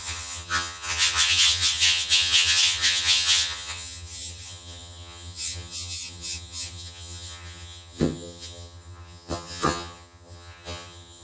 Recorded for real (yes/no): no